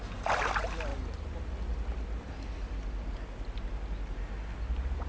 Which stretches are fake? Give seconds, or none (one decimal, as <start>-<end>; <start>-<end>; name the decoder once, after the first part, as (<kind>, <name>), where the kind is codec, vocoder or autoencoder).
none